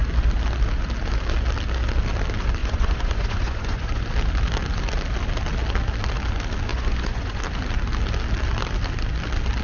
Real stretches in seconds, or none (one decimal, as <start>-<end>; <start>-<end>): 0.0-2.6; 4.0-6.7; 7.4-9.6